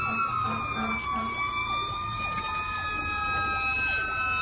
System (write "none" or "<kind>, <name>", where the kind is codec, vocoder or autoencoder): none